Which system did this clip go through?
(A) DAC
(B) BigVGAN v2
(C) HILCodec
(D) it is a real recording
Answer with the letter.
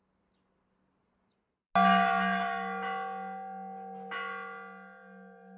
D